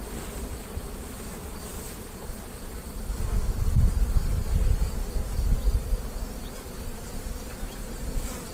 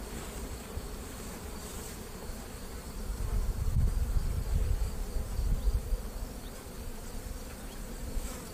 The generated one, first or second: second